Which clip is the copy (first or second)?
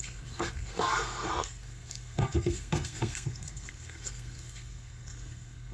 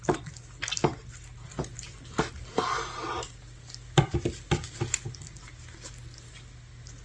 first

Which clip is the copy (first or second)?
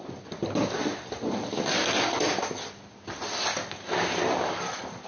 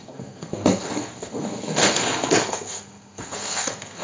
second